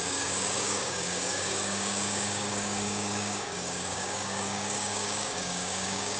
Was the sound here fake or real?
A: fake